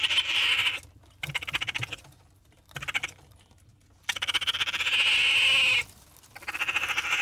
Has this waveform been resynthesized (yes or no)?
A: no